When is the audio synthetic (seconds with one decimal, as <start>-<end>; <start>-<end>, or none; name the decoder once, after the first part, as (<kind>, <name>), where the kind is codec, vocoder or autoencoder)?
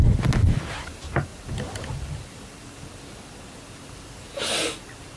none